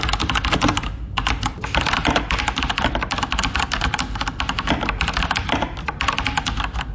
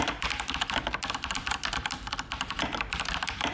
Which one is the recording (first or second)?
first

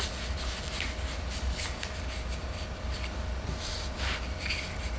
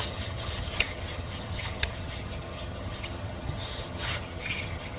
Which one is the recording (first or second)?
first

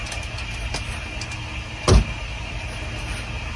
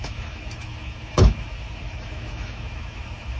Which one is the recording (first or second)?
first